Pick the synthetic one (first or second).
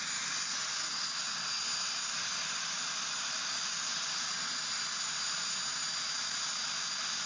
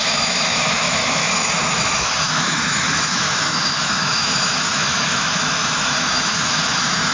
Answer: second